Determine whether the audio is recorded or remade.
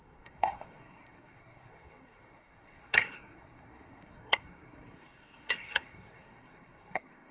remade